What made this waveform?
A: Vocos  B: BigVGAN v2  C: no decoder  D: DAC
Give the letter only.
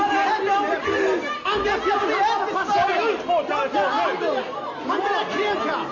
C